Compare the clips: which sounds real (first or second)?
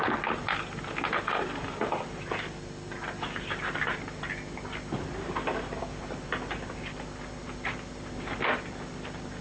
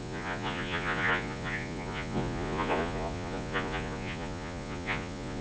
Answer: first